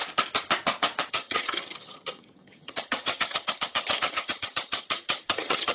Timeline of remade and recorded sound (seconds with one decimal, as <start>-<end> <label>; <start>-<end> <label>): 0.0-1.1 recorded; 1.1-5.7 remade

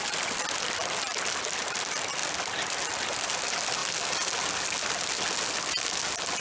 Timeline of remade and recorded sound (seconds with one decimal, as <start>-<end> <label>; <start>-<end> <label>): 0.0-6.4 recorded

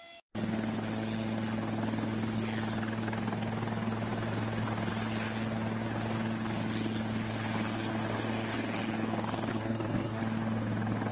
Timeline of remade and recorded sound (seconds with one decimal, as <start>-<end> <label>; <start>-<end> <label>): 0.0-9.5 recorded; 9.5-10.2 remade; 10.2-11.1 recorded

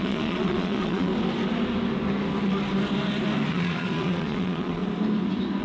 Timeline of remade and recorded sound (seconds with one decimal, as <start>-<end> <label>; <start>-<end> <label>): 0.0-1.1 remade; 1.1-3.5 recorded; 3.5-4.8 remade; 4.8-5.6 recorded

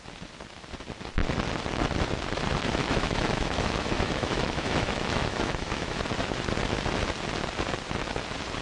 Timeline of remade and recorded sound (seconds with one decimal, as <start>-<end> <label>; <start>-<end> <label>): 0.0-2.8 recorded; 2.8-6.0 remade; 6.0-8.6 recorded